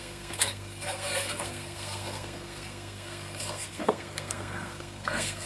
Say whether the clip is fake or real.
fake